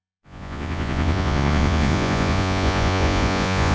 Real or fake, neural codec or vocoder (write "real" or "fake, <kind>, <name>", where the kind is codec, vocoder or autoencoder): fake, vocoder, Vocos